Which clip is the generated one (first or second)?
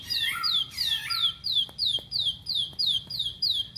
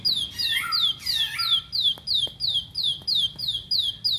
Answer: first